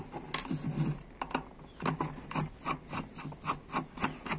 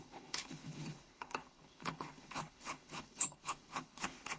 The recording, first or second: first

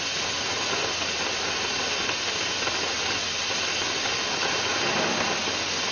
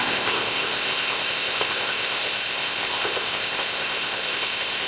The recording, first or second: first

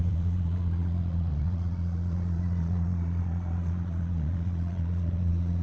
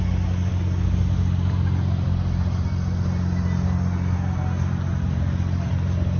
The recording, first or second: second